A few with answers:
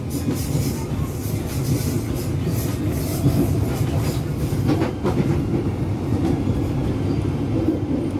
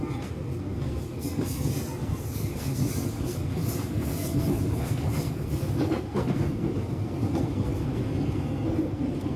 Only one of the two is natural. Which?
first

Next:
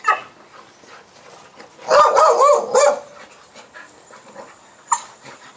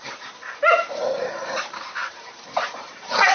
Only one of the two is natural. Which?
first